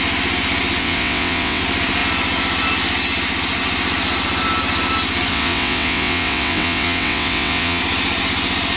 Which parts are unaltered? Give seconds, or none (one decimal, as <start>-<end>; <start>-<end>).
0.0-0.8; 1.6-5.3; 7.8-8.8